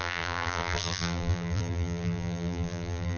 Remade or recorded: remade